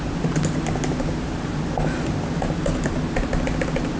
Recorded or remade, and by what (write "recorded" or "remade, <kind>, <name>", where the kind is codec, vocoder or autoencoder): recorded